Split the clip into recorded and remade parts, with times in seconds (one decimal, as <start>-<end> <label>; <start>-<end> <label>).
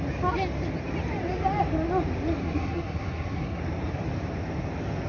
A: 0.0-2.4 recorded; 2.4-3.6 remade; 3.6-5.1 recorded